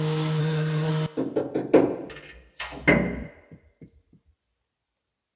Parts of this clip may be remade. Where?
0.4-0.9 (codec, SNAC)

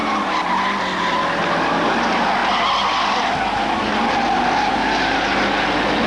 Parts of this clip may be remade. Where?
none

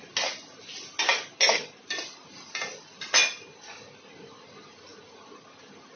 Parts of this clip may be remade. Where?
none

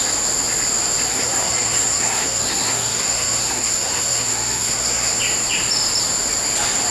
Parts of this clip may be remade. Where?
1.1-5.2 (codec, SNAC)

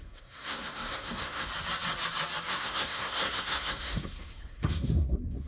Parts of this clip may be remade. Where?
0.0-1.5 (codec, SNAC); 2.5-5.5

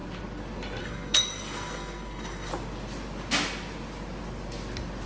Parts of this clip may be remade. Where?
0.8-2.5 (codec, SNAC)